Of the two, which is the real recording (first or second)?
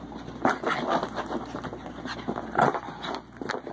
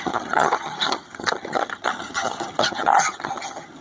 first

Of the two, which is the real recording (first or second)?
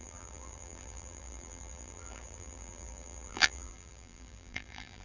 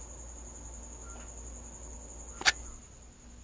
second